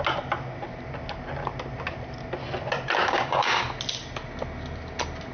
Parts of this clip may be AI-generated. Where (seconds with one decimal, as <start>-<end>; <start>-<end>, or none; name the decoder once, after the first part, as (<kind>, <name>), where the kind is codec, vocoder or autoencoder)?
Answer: 3.0-3.6 (codec, DAC)